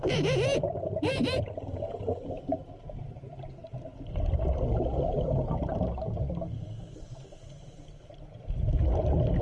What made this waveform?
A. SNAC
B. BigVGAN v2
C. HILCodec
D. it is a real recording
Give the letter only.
D